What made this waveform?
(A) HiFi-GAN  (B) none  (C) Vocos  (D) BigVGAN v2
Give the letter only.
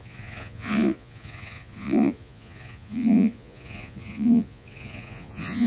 C